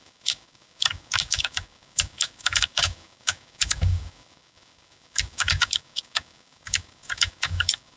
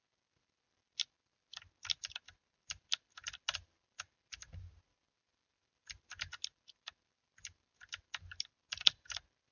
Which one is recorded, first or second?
second